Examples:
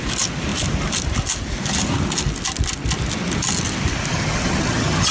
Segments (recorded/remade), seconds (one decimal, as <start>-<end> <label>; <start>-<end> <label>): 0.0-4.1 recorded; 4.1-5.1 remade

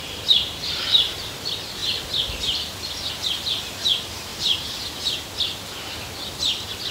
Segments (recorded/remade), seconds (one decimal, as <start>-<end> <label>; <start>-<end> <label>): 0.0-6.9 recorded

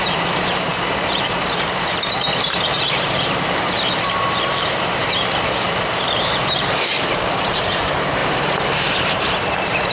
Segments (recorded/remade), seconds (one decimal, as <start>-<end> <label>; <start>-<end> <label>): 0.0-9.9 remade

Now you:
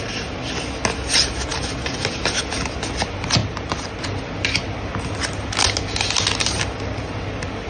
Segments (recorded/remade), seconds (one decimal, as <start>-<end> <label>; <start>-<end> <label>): 0.0-7.7 recorded

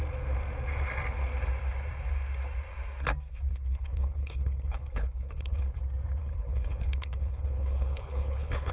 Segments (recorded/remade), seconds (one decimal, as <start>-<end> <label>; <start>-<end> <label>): 0.0-3.5 recorded; 3.5-5.8 remade; 5.8-6.2 recorded; 6.2-8.7 remade